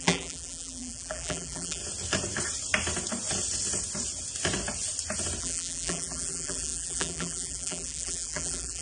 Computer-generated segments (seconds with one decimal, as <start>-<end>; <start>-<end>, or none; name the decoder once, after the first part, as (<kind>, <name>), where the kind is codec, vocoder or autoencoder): 0.0-1.8 (vocoder, BigVGAN v2); 5.4-8.8